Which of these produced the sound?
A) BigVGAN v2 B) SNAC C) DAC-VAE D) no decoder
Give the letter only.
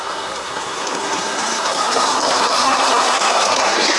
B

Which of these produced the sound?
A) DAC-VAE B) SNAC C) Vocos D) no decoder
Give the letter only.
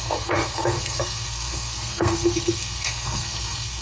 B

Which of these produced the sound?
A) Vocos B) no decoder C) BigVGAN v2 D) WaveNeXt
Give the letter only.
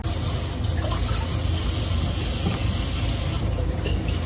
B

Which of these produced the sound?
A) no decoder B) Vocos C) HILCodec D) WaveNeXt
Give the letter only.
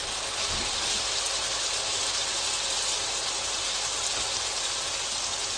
A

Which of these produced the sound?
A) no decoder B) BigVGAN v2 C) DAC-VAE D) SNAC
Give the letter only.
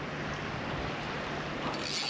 A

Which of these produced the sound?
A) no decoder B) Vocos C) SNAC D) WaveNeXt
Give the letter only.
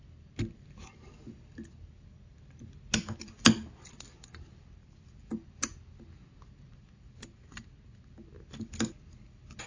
A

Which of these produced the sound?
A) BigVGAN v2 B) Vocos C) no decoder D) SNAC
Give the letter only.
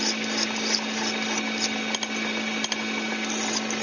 C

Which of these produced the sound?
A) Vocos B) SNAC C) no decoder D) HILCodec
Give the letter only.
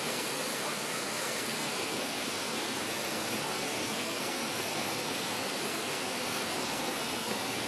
B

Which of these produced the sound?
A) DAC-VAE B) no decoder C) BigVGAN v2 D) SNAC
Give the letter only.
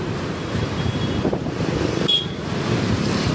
C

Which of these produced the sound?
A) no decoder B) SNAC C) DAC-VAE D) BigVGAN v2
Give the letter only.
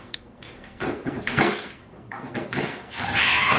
B